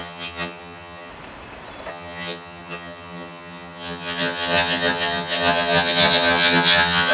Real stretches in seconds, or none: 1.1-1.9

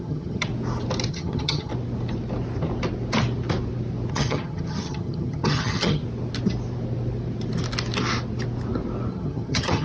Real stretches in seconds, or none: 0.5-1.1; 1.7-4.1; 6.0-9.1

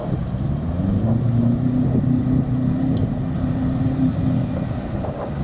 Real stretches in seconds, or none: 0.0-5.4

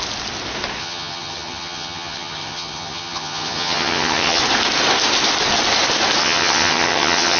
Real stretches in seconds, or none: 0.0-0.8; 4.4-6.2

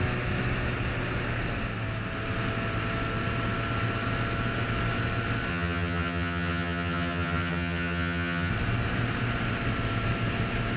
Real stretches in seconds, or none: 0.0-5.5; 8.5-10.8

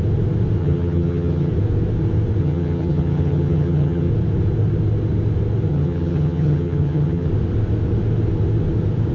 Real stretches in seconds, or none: 0.0-0.6; 1.5-2.4; 4.1-5.7; 7.3-9.1